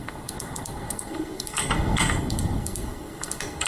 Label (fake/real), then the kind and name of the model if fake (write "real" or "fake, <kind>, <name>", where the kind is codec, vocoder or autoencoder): fake, codec, SNAC